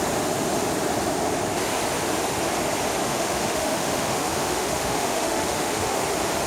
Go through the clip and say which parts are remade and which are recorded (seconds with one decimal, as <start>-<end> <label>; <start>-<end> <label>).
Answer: 0.0-3.0 recorded; 3.0-6.0 remade; 6.0-6.5 recorded